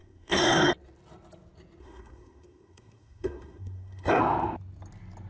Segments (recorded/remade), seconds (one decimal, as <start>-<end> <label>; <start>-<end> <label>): 0.0-0.7 remade; 0.7-1.8 recorded; 1.8-4.2 remade; 4.2-5.3 recorded

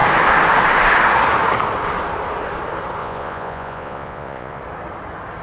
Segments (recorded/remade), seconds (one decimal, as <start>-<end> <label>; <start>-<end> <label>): 0.0-3.0 recorded; 3.0-4.6 remade; 4.6-5.4 recorded

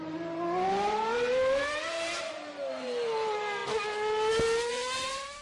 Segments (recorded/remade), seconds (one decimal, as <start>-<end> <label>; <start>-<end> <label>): 0.0-3.6 remade; 3.6-4.7 recorded; 4.7-5.4 remade

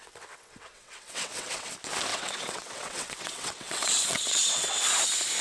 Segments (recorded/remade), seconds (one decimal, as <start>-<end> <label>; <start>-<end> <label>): 0.0-1.7 remade; 1.7-2.1 recorded; 2.1-4.8 remade; 4.8-5.4 recorded